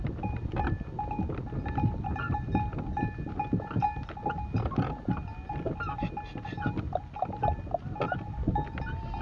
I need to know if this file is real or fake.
real